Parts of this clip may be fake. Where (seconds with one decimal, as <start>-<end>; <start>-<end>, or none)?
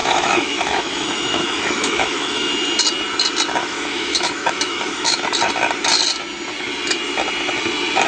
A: 0.0-2.5; 3.6-5.2